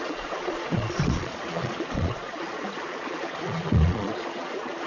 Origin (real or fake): fake